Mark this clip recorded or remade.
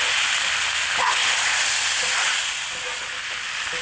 recorded